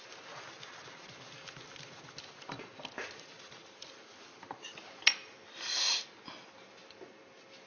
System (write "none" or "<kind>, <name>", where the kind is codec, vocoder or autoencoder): none